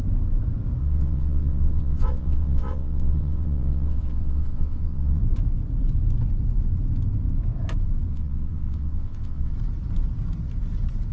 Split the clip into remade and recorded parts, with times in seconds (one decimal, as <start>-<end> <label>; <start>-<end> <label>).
0.0-0.8 recorded; 0.8-5.2 remade; 5.2-8.1 recorded; 8.1-9.5 remade; 9.5-11.1 recorded